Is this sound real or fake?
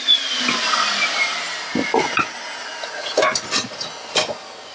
real